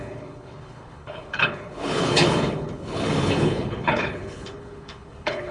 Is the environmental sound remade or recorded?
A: remade